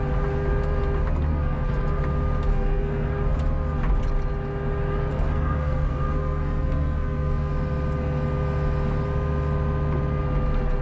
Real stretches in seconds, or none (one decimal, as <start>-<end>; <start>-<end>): 0.0-1.3; 2.0-2.5; 3.1-5.1; 7.5-10.8